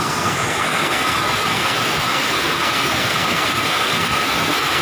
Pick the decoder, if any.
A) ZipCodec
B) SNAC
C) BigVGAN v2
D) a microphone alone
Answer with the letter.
B